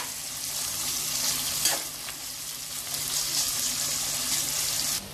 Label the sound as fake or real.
real